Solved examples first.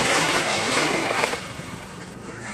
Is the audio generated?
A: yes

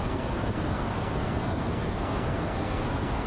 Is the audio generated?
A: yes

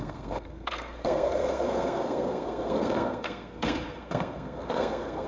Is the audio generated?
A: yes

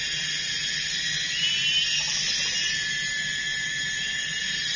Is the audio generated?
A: no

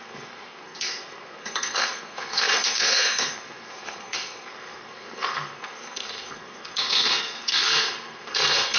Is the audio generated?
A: yes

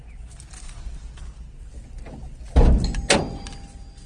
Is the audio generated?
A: no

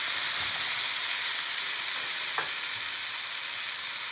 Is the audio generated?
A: no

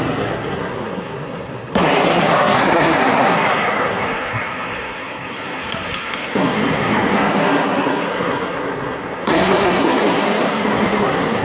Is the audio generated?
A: yes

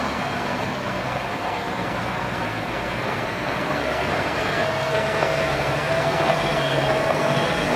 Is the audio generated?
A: yes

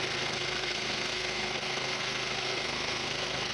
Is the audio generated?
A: yes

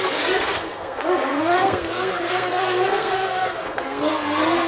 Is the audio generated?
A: yes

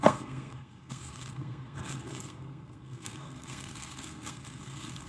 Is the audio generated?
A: yes